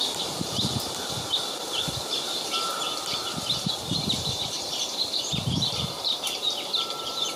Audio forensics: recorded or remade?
remade